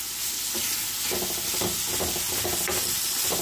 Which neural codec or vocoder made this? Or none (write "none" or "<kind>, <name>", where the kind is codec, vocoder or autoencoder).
none